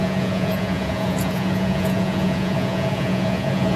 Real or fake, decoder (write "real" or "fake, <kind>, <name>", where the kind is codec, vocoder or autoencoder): fake, vocoder, Vocos